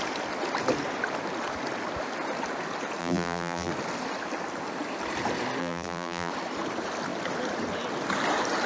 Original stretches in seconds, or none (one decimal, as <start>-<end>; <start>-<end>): 0.0-3.0; 3.7-5.6; 6.3-8.7